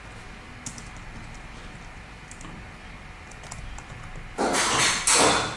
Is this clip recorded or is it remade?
recorded